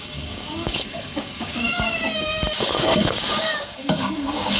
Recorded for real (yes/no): no